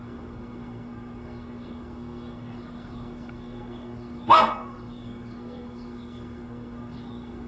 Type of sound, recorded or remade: remade